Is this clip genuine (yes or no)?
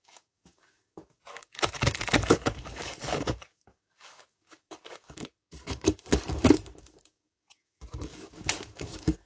no